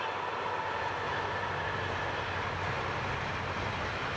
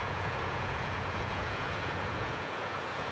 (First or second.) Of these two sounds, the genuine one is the first